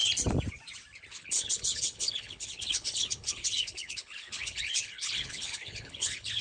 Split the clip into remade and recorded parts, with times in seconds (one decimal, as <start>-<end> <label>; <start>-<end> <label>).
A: 0.0-1.1 recorded; 1.1-6.4 remade